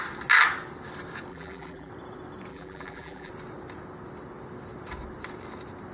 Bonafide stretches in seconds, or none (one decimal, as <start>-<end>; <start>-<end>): 0.0-1.3; 1.9-2.5; 3.3-5.9